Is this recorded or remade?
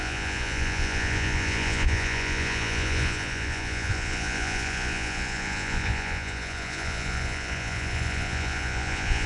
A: remade